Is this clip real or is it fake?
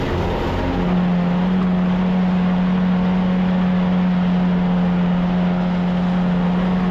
real